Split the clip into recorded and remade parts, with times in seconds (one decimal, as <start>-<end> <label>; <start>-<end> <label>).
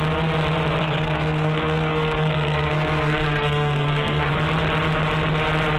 0.0-0.8 recorded; 0.8-4.3 remade; 4.3-5.8 recorded